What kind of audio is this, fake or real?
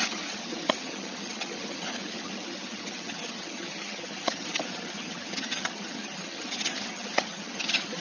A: fake